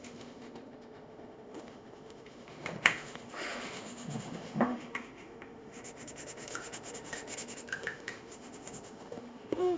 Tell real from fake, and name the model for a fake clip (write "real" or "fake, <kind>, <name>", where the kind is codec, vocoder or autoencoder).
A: fake, autoencoder, DAC-VAE